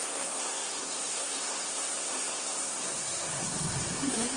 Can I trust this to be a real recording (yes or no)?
no